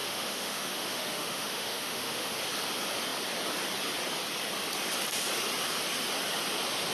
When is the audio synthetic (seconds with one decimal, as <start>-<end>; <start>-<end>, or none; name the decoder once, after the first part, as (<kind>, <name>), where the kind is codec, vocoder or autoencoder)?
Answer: 0.0-2.4 (autoencoder, DAC-VAE)

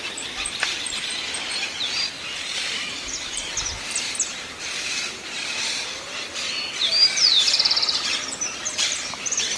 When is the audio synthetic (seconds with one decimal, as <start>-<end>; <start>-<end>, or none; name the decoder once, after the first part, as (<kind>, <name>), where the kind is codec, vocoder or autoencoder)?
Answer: 0.0-9.6 (vocoder, BigVGAN v2)

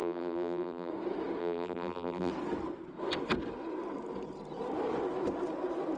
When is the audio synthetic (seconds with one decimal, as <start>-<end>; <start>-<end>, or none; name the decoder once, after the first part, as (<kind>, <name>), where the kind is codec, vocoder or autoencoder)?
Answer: 0.0-0.9 (vocoder, BigVGAN v2); 1.4-2.3

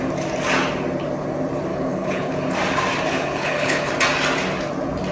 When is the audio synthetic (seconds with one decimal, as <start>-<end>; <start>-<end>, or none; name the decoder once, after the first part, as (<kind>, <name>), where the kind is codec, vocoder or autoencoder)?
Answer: 1.7-2.3 (codec, HILCodec); 3.1-3.9